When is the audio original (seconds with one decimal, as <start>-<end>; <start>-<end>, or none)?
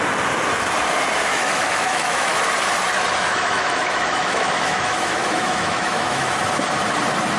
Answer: 0.0-1.3; 2.4-3.3; 6.3-7.4